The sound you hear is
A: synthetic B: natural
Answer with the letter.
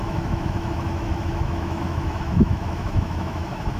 A